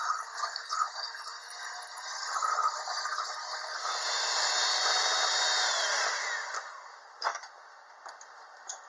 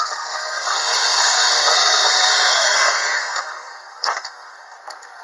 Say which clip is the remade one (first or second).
second